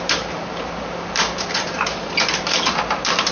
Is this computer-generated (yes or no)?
yes